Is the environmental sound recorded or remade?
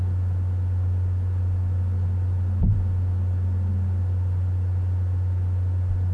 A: recorded